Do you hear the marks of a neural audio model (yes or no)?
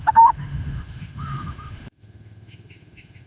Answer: yes